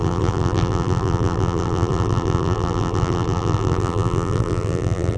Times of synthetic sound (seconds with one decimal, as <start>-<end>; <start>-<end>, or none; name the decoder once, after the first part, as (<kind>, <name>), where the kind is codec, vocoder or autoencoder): 0.0-5.2 (vocoder, BigVGAN v2)